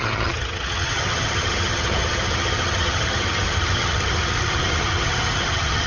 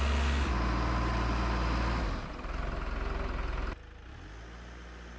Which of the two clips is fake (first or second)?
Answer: first